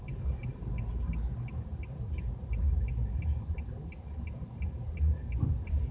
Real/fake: real